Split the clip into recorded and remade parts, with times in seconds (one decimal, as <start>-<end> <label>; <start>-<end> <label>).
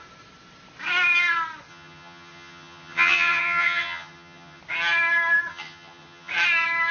0.0-1.7 recorded; 1.7-4.6 remade; 4.6-5.5 recorded; 5.5-6.3 remade; 6.3-6.9 recorded